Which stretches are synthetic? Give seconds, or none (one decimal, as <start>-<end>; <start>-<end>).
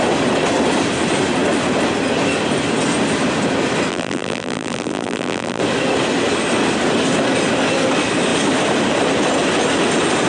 3.9-5.6